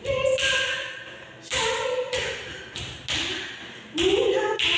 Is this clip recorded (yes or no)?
yes